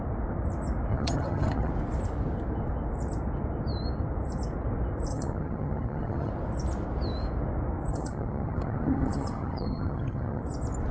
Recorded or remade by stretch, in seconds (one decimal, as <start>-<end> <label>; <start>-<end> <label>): 0.0-0.9 recorded; 0.9-1.7 remade; 1.7-5.1 recorded; 5.1-6.3 remade; 6.3-7.9 recorded; 7.9-10.4 remade; 10.4-10.9 recorded